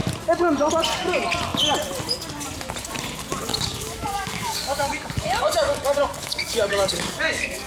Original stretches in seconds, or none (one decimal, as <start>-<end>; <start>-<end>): 0.0-3.5